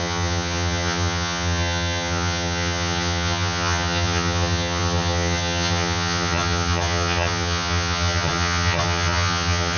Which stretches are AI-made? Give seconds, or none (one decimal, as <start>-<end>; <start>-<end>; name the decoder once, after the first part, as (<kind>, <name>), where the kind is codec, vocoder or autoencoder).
0.0-9.8 (vocoder, HiFi-GAN)

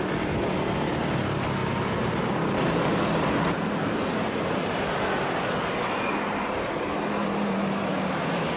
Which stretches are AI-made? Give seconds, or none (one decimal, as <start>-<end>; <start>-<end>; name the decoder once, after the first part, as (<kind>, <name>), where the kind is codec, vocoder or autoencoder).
1.6-4.8 (vocoder, BigVGAN v2); 7.2-7.8

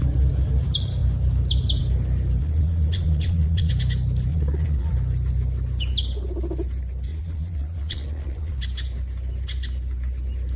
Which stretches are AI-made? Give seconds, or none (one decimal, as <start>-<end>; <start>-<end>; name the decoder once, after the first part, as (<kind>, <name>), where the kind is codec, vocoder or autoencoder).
2.4-3.7 (vocoder, Vocos); 4.3-4.9; 7.1-8.6

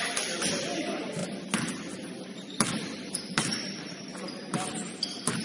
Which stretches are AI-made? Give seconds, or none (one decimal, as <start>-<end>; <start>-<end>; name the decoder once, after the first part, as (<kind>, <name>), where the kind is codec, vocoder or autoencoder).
0.0-1.2 (vocoder, BigVGAN v2); 2.1-4.1

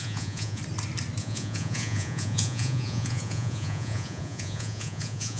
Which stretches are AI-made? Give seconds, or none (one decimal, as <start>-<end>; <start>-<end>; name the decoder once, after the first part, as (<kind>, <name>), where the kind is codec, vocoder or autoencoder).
0.0-0.6 (vocoder, Vocos); 1.2-5.4

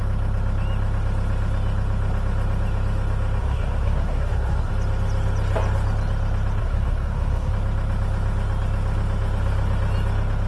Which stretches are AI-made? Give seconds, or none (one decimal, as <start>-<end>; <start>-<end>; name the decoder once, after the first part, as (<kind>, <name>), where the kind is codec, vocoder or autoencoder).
3.4-4.7 (codec, SNAC); 6.6-7.5

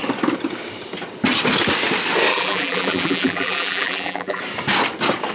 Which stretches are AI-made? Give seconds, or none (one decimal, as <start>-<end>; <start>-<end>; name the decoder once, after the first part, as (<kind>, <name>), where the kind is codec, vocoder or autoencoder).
2.3-4.4 (vocoder, BigVGAN v2)

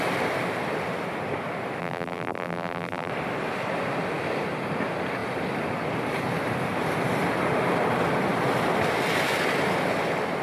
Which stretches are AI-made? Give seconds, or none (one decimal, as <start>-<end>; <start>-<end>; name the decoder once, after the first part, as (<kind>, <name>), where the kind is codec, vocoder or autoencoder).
1.8-3.1 (vocoder, BigVGAN v2)